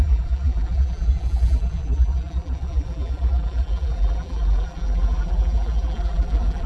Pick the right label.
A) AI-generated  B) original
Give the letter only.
A